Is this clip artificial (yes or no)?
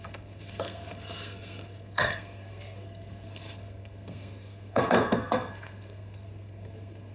yes